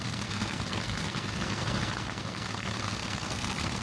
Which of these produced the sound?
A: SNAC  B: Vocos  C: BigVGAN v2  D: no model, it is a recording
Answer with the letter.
A